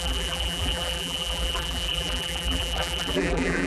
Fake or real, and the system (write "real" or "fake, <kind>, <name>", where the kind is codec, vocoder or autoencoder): fake, vocoder, BigVGAN v2